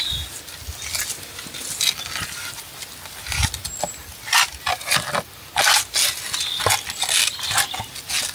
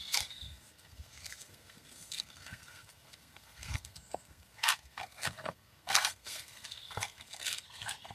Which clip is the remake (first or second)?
second